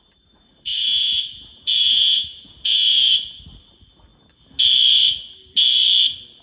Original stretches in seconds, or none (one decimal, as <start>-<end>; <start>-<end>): 0.0-0.7; 3.4-6.4